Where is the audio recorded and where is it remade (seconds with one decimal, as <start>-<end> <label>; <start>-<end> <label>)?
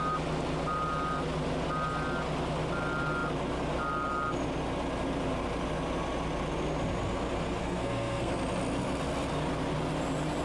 0.0-7.6 recorded; 7.6-8.3 remade; 8.3-10.4 recorded